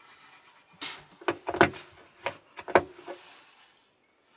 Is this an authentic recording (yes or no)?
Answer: yes